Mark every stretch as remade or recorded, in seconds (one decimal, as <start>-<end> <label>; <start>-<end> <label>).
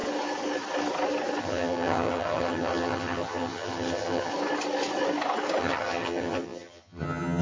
0.0-1.4 recorded; 1.4-4.3 remade; 4.3-5.6 recorded; 5.6-7.4 remade